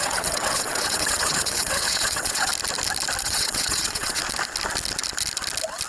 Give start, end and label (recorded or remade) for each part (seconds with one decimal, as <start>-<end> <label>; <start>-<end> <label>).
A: 0.0-2.5 remade; 2.5-3.2 recorded; 3.2-4.2 remade; 4.2-5.9 recorded